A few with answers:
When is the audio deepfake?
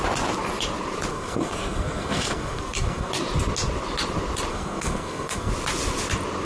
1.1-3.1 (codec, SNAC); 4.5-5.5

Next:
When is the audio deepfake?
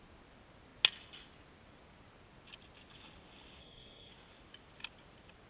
3.6-4.1 (codec, SNAC)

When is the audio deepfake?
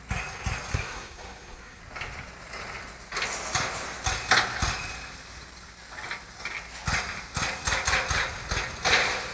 0.7-1.8 (codec, SNAC)